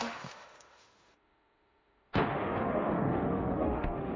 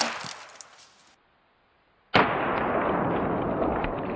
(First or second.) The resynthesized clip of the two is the first